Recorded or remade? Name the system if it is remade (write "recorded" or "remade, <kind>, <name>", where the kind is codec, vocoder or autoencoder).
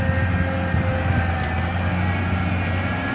recorded